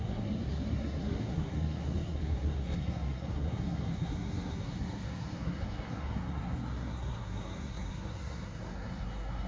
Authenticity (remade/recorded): remade